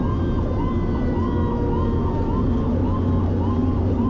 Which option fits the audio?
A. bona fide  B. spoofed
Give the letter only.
A